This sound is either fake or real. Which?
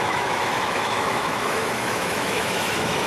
fake